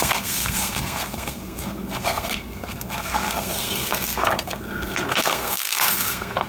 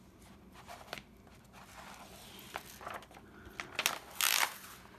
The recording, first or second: second